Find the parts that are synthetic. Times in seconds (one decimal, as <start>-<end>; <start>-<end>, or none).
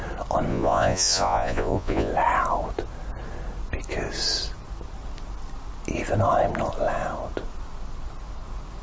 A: 0.5-2.1